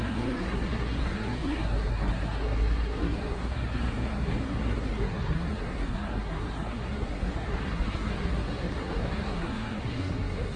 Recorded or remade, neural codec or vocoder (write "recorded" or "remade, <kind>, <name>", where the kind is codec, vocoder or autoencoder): remade, codec, SNAC